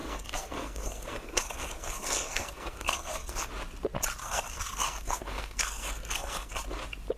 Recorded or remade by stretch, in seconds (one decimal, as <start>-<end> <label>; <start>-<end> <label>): 0.0-3.5 remade; 3.5-4.2 recorded; 4.2-6.5 remade; 6.5-7.2 recorded